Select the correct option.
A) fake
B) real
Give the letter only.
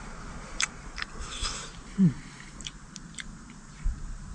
A